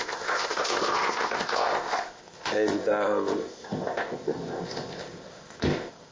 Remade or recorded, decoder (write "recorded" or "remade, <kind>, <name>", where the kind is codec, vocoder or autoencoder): remade, codec, ZipCodec